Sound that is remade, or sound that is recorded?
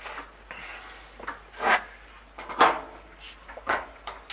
recorded